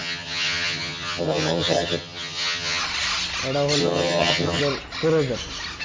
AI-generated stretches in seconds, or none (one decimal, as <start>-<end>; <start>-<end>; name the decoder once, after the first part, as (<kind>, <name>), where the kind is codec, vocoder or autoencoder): 0.0-2.8 (vocoder, HiFi-GAN); 3.8-4.6